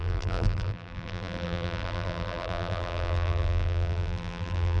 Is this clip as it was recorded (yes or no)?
no